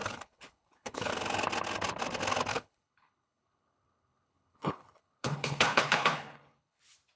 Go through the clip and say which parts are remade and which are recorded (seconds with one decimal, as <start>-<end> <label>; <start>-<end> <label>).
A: 0.0-1.1 remade; 1.1-2.5 recorded; 2.5-6.8 remade; 6.8-7.2 recorded

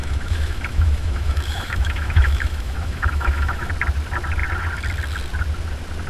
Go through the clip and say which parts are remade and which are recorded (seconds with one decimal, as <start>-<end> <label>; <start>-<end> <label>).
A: 0.0-3.7 remade; 3.7-6.1 recorded

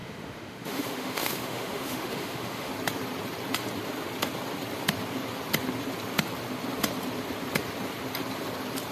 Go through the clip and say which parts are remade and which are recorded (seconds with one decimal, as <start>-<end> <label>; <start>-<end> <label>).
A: 0.0-2.7 remade; 2.7-8.9 recorded

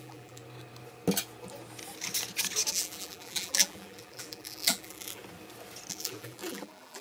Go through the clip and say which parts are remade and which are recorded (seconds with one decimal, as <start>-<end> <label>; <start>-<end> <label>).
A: 0.0-0.4 remade; 0.4-2.7 recorded; 2.7-5.2 remade; 5.2-5.9 recorded; 5.9-7.0 remade

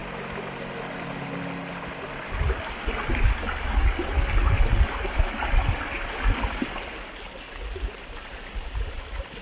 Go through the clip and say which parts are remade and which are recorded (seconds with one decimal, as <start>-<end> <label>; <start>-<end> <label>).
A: 0.0-9.4 recorded